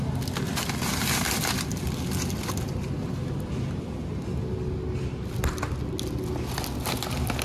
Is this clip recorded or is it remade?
recorded